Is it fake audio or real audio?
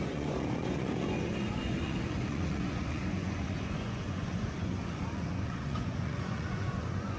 fake